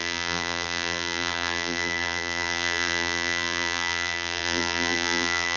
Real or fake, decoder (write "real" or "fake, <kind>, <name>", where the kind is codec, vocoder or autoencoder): fake, vocoder, BigVGAN v2